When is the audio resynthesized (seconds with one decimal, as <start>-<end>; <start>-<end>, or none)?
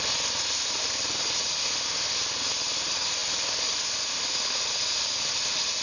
none